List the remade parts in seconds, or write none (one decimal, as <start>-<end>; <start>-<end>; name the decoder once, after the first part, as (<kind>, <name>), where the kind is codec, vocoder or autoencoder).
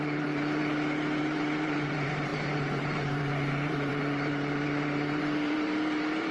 0.0-0.6 (vocoder, BigVGAN v2); 1.2-6.3